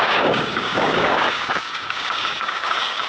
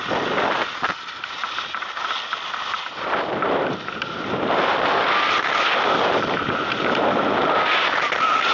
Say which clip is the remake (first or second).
first